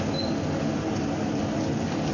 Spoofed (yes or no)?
no